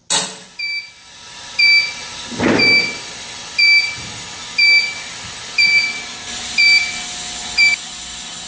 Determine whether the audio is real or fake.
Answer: real